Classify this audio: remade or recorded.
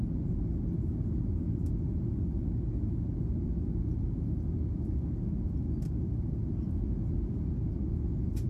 recorded